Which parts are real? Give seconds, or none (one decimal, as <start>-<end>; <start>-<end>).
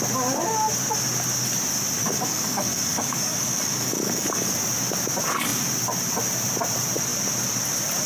0.0-2.0; 4.5-8.1